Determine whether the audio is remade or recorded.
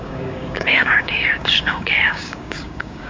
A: remade